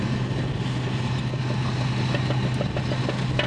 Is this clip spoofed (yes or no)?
no